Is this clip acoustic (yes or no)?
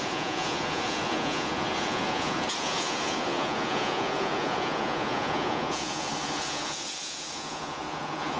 no